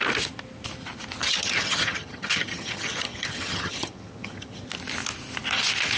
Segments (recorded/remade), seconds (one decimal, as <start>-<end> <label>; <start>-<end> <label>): 0.0-1.2 recorded; 1.2-4.7 remade; 4.7-6.0 recorded